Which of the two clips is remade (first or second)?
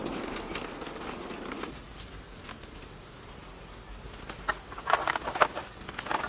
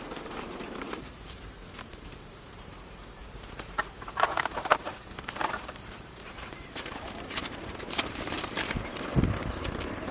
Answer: second